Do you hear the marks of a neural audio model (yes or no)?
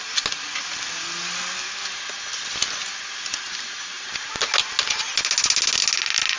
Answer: no